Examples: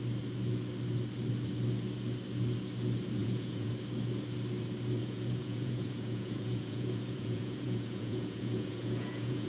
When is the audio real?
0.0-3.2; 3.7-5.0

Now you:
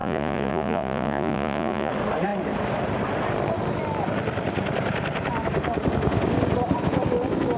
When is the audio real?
1.9-7.6

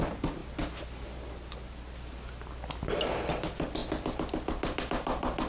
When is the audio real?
0.0-5.5